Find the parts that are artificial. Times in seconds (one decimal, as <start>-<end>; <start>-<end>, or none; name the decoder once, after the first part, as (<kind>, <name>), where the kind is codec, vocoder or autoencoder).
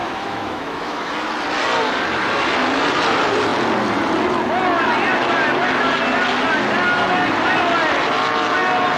0.0-1.1 (autoencoder, DAC-VAE)